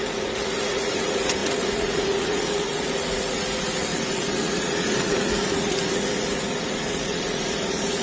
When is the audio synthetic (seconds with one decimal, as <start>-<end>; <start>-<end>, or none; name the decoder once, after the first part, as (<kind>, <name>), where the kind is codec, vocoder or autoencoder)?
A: 0.0-8.0 (vocoder, Vocos)